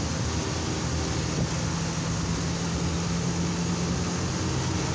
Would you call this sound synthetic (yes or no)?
no